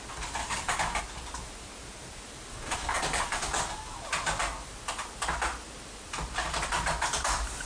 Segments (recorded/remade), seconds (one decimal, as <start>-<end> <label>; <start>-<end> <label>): 0.0-0.4 recorded; 0.4-1.0 remade; 1.0-2.5 recorded; 2.5-4.0 remade; 4.0-7.7 recorded